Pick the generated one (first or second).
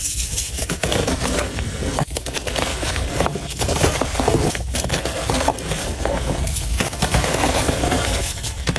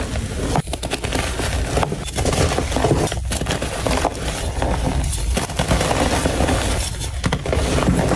first